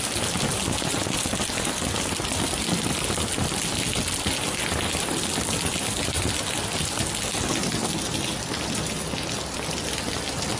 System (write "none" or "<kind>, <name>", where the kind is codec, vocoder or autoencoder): none